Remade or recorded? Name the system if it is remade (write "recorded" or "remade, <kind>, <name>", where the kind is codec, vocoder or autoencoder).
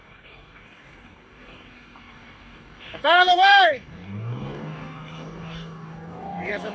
remade, codec, DAC